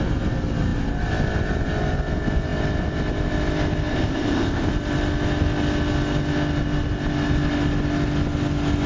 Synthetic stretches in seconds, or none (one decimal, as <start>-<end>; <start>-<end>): 3.9-4.7